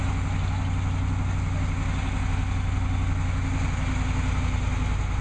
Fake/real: real